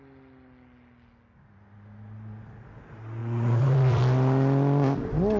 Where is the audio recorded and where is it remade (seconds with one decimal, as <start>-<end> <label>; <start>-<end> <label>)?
0.0-3.2 recorded; 3.2-4.0 remade; 4.0-5.4 recorded